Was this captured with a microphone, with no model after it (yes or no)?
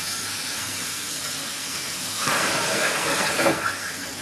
no